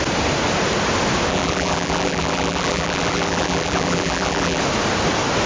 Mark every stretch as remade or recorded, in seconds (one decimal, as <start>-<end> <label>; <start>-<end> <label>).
0.0-1.3 recorded; 1.3-4.6 remade; 4.6-5.5 recorded